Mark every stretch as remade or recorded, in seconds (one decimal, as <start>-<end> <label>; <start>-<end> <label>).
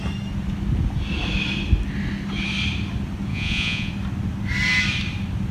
0.0-3.3 recorded; 3.3-3.9 remade; 3.9-5.5 recorded